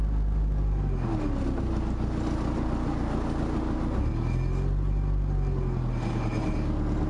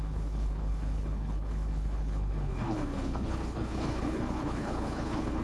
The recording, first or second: first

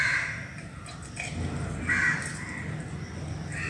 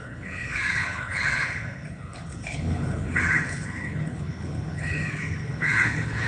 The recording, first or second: first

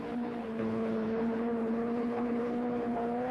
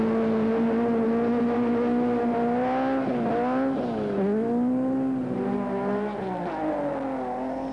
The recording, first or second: second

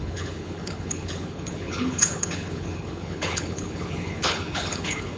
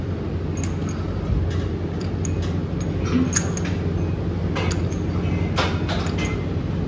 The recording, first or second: second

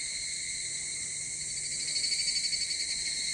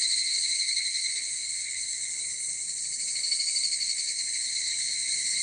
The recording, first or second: first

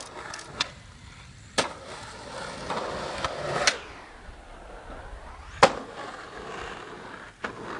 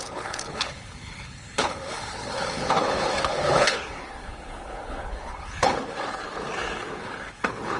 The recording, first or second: first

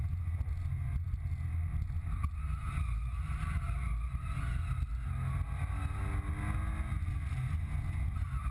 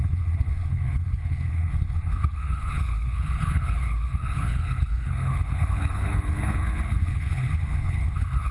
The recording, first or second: first